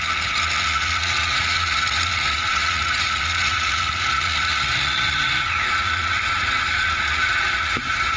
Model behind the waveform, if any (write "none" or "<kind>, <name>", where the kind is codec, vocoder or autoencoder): vocoder, Vocos